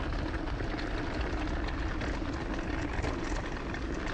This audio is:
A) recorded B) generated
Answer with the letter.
A